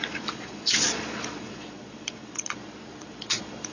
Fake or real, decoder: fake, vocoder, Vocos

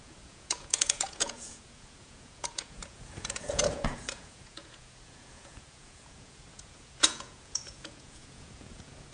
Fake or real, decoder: fake, vocoder, Vocos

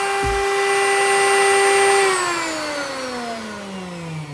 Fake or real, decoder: real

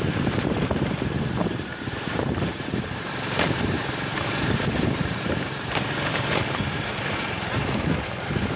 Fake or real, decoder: fake, vocoder, BigVGAN v2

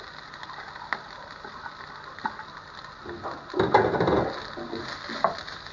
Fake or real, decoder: real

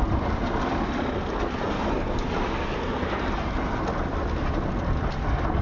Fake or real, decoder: real